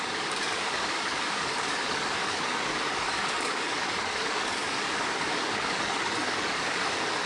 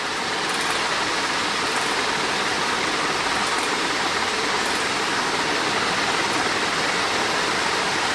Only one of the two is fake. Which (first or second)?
first